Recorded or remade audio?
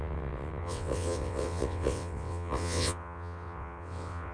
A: remade